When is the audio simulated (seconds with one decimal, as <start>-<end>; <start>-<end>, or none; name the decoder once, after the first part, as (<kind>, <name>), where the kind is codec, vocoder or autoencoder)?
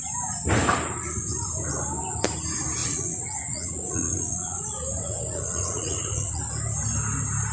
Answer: 2.8-4.6 (vocoder, Vocos); 5.0-6.4